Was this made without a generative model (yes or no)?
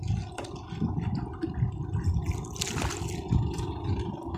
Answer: yes